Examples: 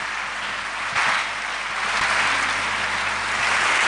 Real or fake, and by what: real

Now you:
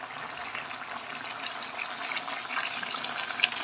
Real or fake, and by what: real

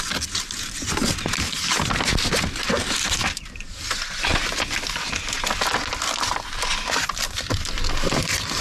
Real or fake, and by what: real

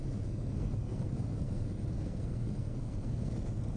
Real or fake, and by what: fake, codec, SNAC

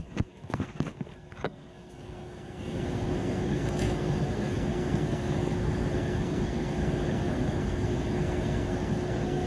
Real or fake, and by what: fake, codec, SNAC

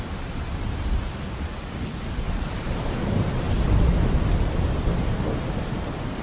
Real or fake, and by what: real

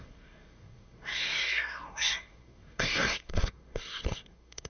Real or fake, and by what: fake, codec, SNAC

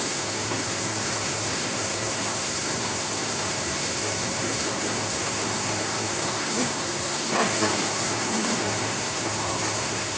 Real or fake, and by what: fake, codec, SNAC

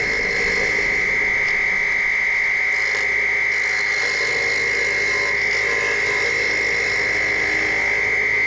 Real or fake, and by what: real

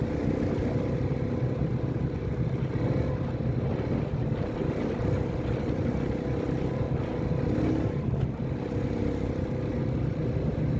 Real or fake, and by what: real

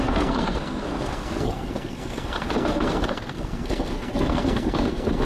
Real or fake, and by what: fake, codec, SNAC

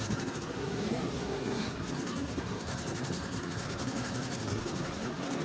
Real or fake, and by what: fake, codec, SNAC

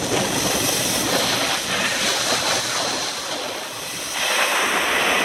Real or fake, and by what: real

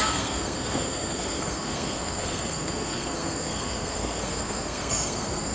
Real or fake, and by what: fake, codec, SNAC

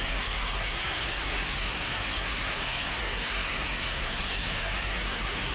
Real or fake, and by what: fake, codec, SNAC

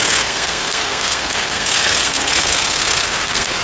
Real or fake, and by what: fake, codec, SNAC